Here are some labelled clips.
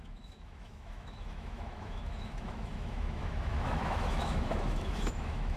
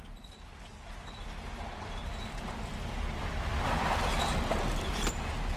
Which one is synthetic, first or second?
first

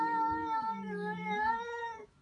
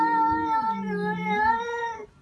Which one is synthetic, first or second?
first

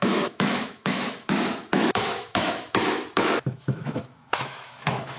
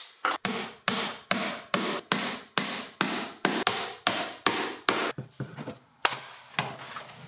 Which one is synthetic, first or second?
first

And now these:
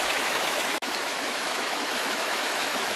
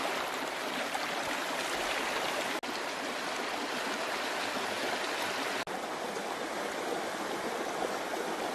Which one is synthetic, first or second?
first